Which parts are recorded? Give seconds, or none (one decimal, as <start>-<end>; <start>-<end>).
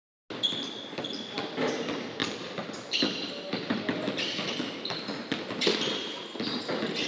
0.0-7.1